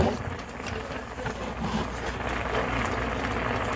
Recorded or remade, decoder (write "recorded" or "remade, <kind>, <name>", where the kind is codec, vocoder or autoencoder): recorded